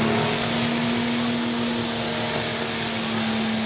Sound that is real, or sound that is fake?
real